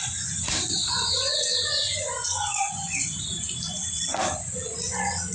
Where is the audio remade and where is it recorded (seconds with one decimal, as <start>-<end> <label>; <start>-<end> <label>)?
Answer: 0.0-0.8 recorded; 0.8-3.2 remade; 3.2-5.3 recorded